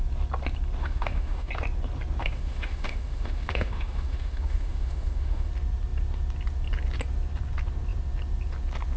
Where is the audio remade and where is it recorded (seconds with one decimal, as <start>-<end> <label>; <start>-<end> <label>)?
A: 0.0-0.8 recorded; 0.8-1.5 remade; 1.5-2.2 recorded; 2.2-5.5 remade; 5.5-9.0 recorded